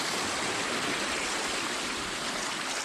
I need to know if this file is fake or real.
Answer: real